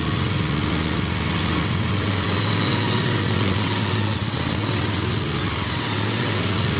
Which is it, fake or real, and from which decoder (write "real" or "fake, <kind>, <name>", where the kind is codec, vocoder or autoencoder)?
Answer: fake, vocoder, WaveNeXt